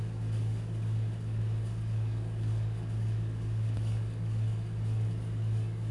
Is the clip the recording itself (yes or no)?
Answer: no